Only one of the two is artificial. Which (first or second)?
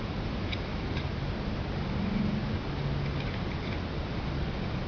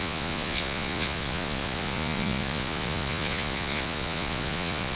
second